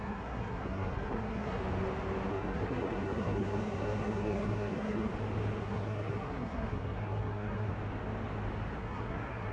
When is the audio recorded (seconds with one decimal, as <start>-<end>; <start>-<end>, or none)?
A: 1.6-2.3; 5.1-5.6; 7.7-8.8